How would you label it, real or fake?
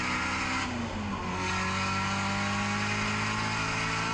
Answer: real